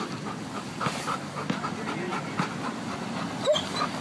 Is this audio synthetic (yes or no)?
no